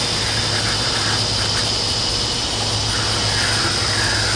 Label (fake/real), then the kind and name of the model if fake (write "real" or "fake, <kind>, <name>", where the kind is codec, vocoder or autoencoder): real